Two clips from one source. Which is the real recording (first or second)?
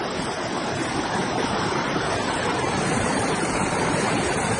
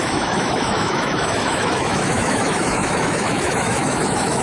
first